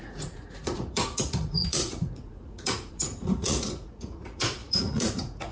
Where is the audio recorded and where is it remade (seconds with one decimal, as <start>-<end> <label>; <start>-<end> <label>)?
0.0-5.5 remade